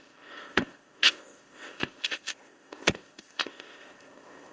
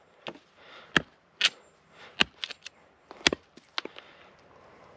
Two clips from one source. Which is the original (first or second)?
second